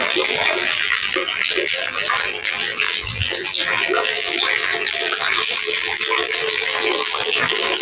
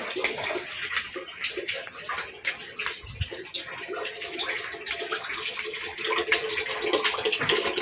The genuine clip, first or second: second